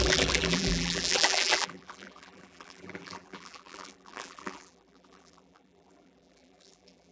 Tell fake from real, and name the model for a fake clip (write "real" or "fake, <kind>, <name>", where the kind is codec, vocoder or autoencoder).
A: fake, vocoder, BigVGAN v2